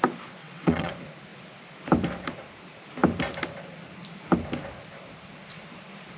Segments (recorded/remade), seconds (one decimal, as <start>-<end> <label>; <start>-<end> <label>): 0.0-0.4 recorded; 0.4-0.9 remade; 0.9-6.2 recorded